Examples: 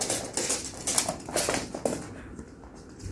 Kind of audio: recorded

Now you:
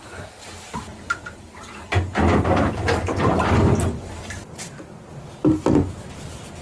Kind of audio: recorded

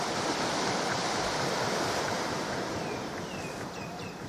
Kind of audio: recorded